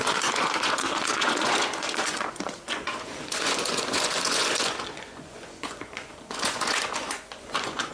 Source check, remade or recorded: remade